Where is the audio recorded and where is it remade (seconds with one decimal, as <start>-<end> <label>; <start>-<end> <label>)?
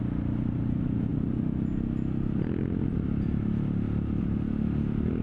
0.0-5.2 recorded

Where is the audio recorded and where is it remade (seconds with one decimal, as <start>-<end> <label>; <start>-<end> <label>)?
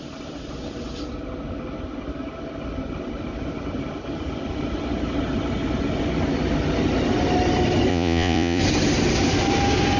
0.0-7.9 recorded; 7.9-8.6 remade; 8.6-10.0 recorded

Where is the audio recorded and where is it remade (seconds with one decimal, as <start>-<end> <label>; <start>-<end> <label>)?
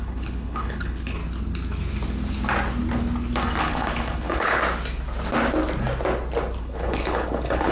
0.0-1.2 remade; 1.2-3.6 recorded; 3.6-4.6 remade; 4.6-6.6 recorded; 6.6-7.7 remade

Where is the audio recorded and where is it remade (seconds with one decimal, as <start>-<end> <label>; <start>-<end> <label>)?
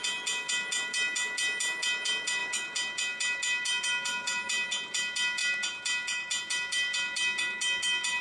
0.0-8.2 recorded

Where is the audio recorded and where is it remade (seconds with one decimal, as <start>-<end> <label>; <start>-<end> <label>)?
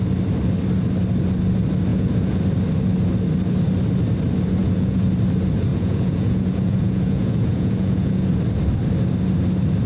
0.0-1.9 recorded; 1.9-2.4 remade; 2.4-4.6 recorded; 4.6-5.1 remade; 5.1-5.7 recorded; 5.7-8.3 remade; 8.3-9.9 recorded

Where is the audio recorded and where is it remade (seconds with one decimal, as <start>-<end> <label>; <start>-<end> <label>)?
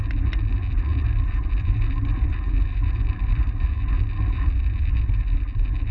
0.0-0.9 recorded; 0.9-4.4 remade; 4.4-5.9 recorded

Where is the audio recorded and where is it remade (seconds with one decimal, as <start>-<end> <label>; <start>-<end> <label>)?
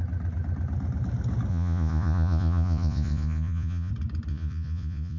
0.0-1.5 recorded; 1.5-3.9 remade; 3.9-4.3 recorded; 4.3-5.2 remade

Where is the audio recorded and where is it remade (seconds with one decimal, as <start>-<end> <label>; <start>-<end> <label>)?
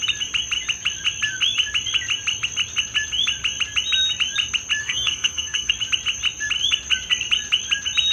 0.0-4.8 recorded; 4.8-5.7 remade; 5.7-8.1 recorded